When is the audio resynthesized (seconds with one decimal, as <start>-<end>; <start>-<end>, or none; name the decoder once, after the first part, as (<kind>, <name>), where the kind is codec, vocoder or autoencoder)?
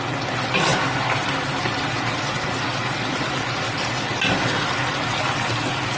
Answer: none